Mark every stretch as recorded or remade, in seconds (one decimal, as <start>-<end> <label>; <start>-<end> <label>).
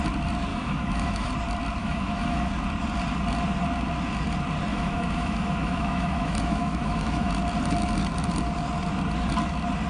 0.0-0.5 recorded; 0.5-1.3 remade; 1.3-1.8 recorded; 1.8-2.5 remade; 2.5-4.7 recorded; 4.7-7.3 remade; 7.3-9.9 recorded